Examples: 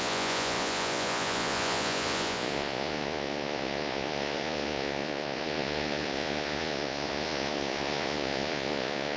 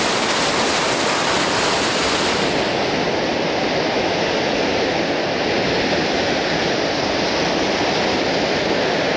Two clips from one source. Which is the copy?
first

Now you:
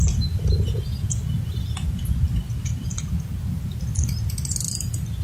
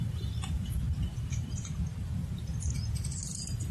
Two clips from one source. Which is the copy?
second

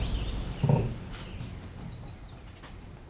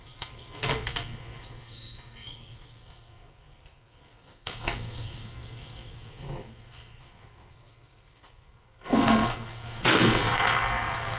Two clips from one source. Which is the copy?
second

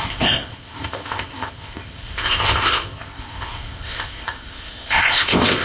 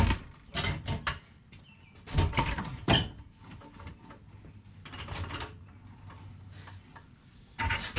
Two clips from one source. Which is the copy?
first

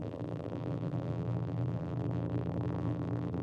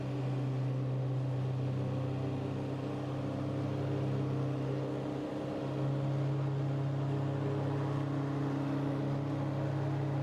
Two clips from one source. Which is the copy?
first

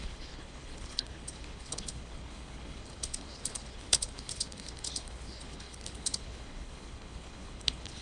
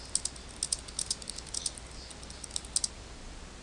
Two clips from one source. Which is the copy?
first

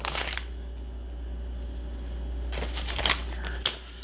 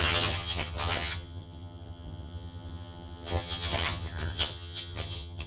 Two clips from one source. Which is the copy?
second